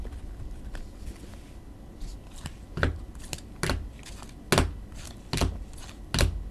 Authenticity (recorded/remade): recorded